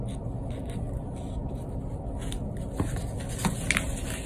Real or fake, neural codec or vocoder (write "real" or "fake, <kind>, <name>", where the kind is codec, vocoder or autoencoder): real